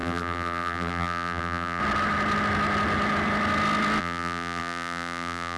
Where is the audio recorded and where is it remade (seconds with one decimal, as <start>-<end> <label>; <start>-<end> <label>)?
0.0-1.8 remade; 1.8-4.0 recorded; 4.0-5.6 remade